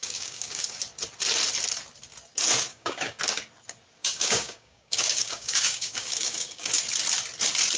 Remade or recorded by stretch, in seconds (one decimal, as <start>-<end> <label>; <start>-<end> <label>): 0.0-0.8 remade; 0.8-2.7 recorded; 2.7-3.2 remade; 3.2-4.0 recorded; 4.0-6.7 remade; 6.7-7.8 recorded